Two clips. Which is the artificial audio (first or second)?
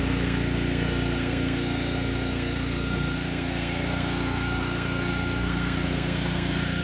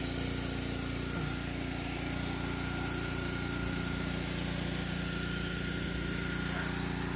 first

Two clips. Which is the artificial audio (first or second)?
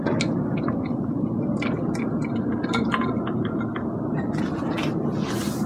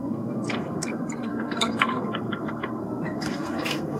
second